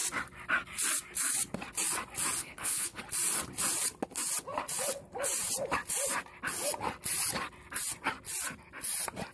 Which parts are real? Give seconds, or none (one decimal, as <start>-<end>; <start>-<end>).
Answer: 0.0-2.4; 3.0-9.3